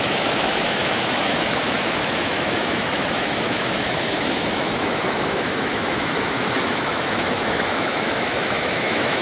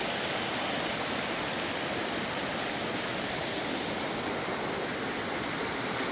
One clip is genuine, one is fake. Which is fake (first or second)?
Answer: first